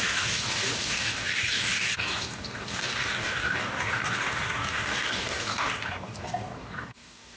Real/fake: fake